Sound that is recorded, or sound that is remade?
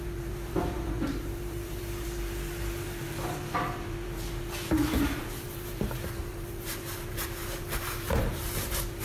remade